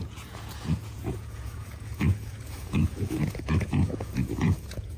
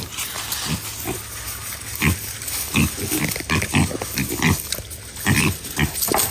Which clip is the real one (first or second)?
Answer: second